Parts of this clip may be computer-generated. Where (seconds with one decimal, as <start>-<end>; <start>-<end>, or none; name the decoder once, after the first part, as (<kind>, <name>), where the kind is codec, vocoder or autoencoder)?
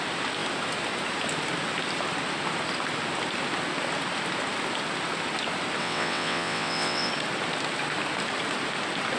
5.8-7.1 (vocoder, WaveNeXt)